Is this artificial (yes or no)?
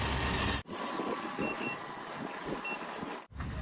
no